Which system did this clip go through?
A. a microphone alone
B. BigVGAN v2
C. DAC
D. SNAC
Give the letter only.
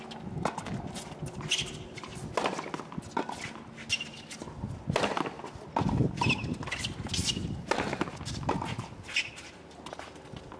A